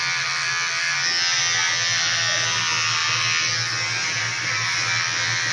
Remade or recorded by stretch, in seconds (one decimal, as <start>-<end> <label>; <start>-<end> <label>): 0.0-5.5 recorded